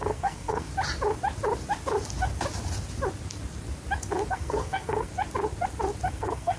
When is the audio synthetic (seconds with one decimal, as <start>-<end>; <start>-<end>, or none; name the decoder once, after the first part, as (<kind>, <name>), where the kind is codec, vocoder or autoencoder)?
0.0-0.7 (codec, SNAC); 4.3-5.1; 6.1-6.6